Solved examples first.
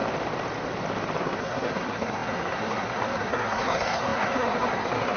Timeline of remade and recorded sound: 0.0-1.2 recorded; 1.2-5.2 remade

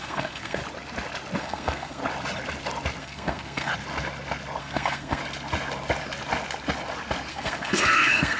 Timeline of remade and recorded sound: 0.0-0.6 remade; 0.6-1.4 recorded; 1.4-2.0 remade; 2.0-3.0 recorded; 3.0-3.7 remade; 3.7-4.6 recorded; 4.6-5.2 remade; 5.2-7.3 recorded; 7.3-8.4 remade